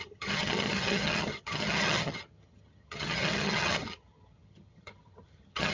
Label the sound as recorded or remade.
remade